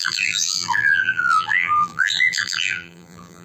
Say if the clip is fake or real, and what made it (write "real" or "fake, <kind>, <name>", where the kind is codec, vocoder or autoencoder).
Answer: fake, vocoder, BigVGAN v2